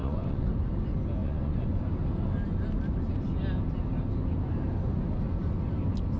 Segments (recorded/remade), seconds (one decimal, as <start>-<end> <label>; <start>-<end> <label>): 0.0-0.5 remade; 0.5-1.2 recorded; 1.2-1.8 remade; 1.8-6.2 recorded